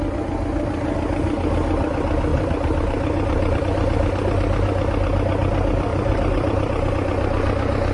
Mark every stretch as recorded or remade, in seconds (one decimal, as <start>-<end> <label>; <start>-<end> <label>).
0.0-2.3 recorded; 2.3-3.6 remade; 3.6-5.9 recorded; 5.9-6.9 remade; 6.9-7.9 recorded

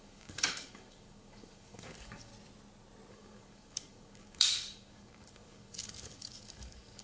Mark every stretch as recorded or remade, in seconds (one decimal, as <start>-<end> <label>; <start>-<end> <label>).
0.0-2.3 remade; 2.3-3.1 recorded; 3.1-7.0 remade

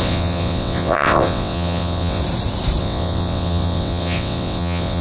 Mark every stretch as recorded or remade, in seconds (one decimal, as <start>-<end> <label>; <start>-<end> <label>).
0.0-2.2 remade; 2.2-2.8 recorded; 2.8-5.0 remade